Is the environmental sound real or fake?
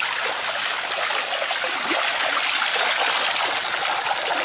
real